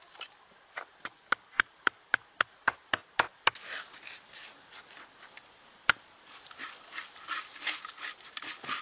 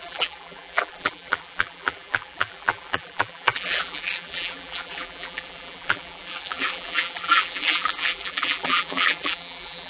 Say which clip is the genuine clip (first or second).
first